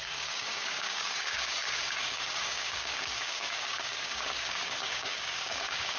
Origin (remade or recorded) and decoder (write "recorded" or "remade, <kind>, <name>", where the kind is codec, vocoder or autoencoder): remade, codec, DAC